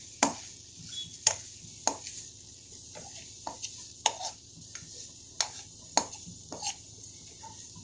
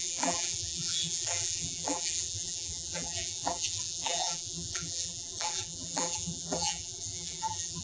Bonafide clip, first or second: first